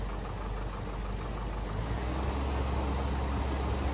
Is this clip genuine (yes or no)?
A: yes